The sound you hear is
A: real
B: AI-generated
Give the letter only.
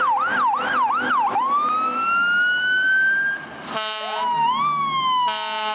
A